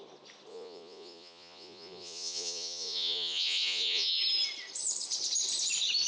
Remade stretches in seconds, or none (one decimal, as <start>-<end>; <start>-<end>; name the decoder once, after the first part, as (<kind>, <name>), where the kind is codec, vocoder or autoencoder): 0.5-4.2 (vocoder, Vocos)